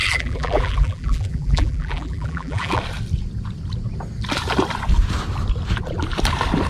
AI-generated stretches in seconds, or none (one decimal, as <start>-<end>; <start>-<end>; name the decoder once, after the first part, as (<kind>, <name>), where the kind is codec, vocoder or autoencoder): 0.0-2.8 (vocoder, BigVGAN v2)